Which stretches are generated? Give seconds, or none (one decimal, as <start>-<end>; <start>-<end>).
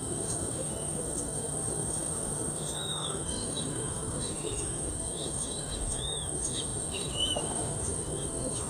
0.0-8.7